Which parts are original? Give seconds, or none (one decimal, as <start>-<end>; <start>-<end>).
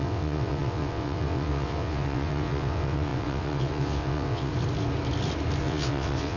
4.5-5.6